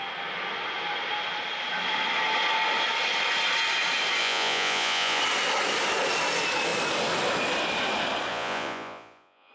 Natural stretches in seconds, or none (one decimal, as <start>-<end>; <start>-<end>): 0.0-4.2; 5.2-8.3